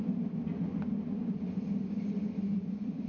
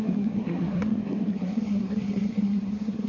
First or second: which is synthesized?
second